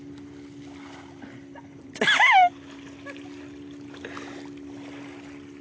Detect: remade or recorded recorded